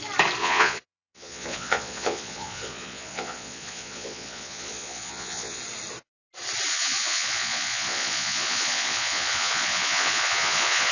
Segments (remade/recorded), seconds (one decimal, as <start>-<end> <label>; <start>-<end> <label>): 0.0-0.4 recorded; 0.4-5.6 remade; 5.6-6.7 recorded; 6.7-10.9 remade